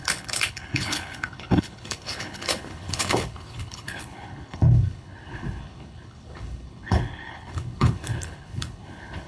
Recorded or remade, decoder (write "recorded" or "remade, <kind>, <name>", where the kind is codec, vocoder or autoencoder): remade, codec, HILCodec